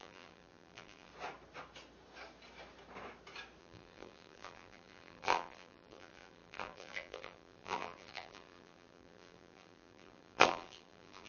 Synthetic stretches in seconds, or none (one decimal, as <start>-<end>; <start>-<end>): 0.0-1.1; 3.6-11.3